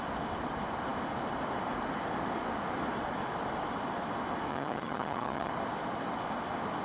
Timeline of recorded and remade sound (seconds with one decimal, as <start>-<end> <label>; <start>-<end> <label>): 0.0-4.5 recorded; 4.5-5.5 remade; 5.5-6.8 recorded